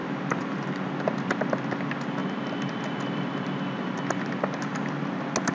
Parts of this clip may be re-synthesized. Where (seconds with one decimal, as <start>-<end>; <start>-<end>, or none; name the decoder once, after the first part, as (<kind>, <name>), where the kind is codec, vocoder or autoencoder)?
0.0-0.9 (vocoder, BigVGAN v2)